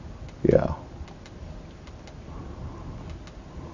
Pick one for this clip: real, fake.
real